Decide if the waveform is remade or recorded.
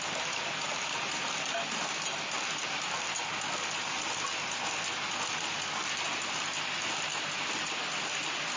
recorded